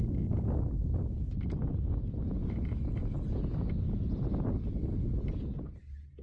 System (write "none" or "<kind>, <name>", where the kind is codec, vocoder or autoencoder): none